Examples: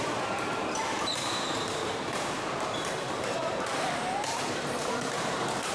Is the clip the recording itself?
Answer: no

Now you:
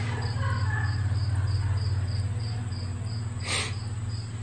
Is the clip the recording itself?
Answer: yes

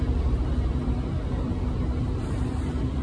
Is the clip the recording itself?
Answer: no